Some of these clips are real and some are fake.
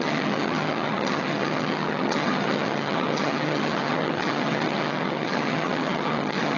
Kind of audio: fake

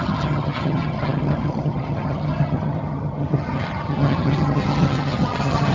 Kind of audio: fake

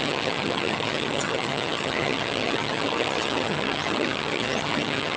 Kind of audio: fake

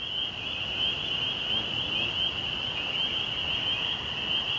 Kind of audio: real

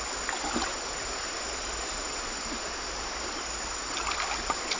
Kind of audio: real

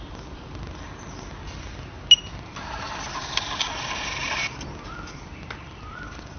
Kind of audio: real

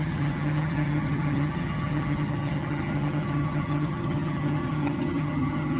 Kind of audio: fake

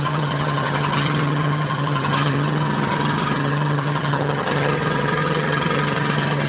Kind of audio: fake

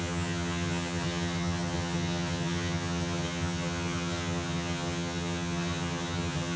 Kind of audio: fake